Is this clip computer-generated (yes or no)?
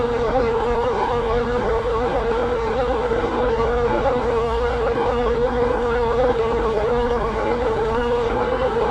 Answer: yes